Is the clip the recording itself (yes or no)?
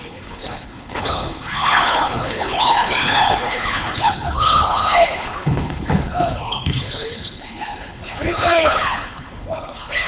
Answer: no